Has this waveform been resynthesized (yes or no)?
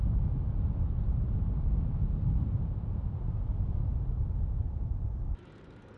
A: no